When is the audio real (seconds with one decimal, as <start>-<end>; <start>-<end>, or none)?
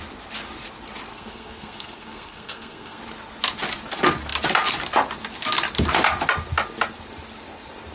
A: 0.0-1.1; 3.0-7.9